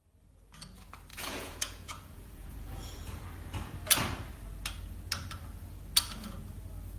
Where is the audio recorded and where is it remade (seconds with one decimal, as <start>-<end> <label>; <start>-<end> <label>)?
0.0-1.1 recorded; 1.1-3.2 remade; 3.2-7.0 recorded